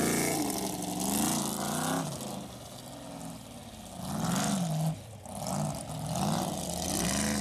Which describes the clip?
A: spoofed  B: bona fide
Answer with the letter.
B